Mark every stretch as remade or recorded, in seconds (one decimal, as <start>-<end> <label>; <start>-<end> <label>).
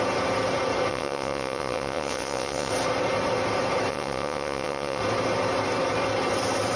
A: 0.0-0.9 recorded; 0.9-2.7 remade; 2.7-3.9 recorded; 3.9-5.0 remade; 5.0-6.8 recorded